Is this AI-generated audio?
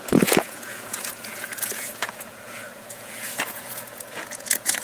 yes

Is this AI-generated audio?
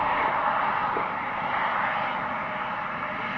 no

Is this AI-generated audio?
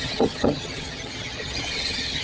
yes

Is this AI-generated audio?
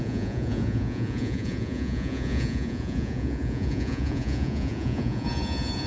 yes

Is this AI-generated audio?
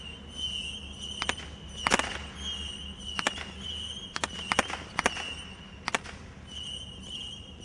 no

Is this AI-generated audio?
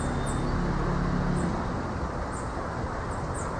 no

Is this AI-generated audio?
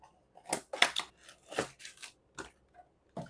no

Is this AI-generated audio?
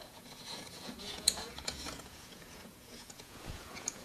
yes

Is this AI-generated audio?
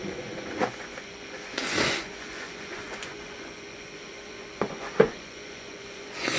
yes